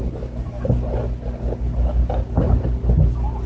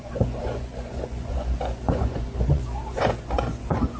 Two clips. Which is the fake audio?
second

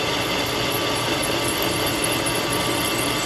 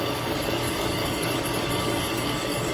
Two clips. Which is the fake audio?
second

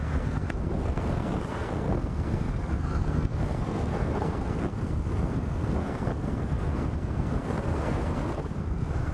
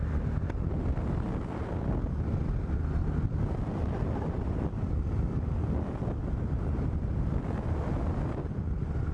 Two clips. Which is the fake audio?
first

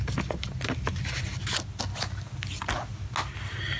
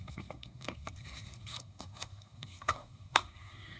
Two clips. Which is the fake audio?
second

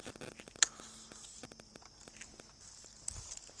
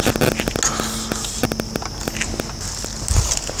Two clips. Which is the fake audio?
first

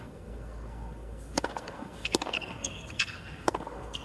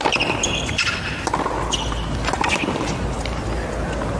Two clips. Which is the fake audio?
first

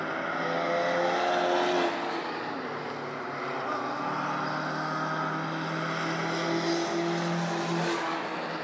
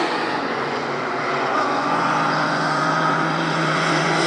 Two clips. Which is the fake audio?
second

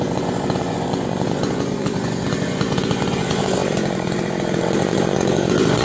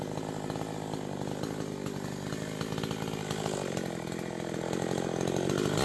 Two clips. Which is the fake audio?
first